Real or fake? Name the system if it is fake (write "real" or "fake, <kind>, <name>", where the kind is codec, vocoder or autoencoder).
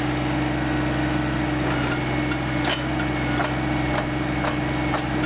real